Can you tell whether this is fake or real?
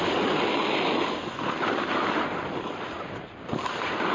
real